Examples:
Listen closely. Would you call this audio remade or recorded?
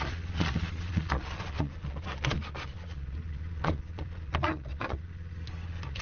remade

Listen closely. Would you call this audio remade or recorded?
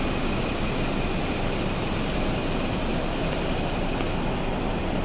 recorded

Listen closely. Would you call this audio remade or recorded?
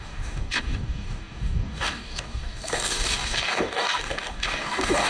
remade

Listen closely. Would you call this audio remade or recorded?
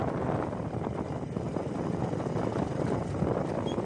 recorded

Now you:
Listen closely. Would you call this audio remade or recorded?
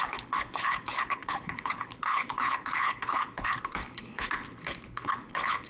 remade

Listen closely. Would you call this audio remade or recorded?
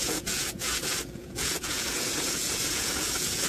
remade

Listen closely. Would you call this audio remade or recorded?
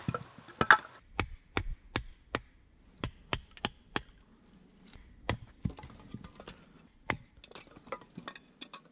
recorded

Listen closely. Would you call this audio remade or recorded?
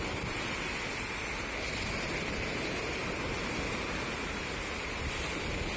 recorded